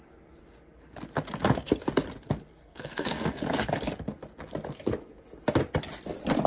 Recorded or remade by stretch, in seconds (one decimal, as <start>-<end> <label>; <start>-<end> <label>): 0.0-2.6 recorded; 2.6-3.4 remade; 3.4-6.5 recorded